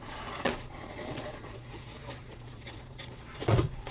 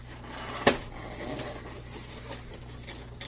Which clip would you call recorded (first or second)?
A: second